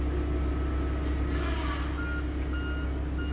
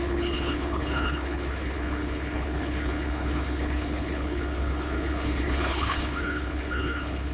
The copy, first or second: second